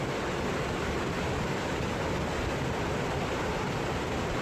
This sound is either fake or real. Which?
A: real